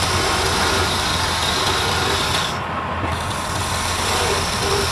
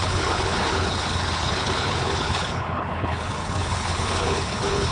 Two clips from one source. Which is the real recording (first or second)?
first